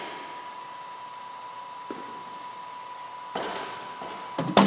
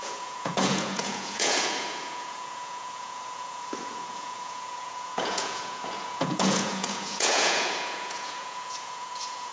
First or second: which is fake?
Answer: second